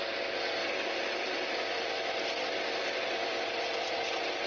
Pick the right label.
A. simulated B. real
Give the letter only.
B